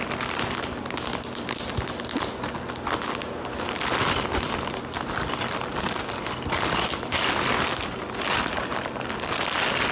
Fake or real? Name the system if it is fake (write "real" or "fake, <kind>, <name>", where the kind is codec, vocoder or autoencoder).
real